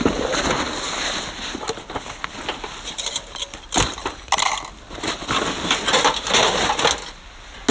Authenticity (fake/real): real